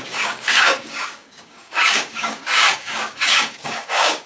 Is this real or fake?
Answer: fake